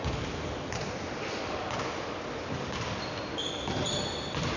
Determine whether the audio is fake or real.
real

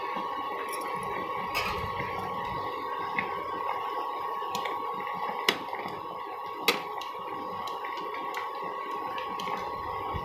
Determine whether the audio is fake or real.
real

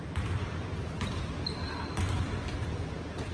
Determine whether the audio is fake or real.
real